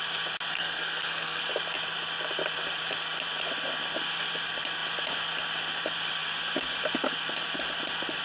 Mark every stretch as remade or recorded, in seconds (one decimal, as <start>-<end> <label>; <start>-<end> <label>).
0.0-0.5 recorded; 0.5-1.4 remade; 1.4-8.2 recorded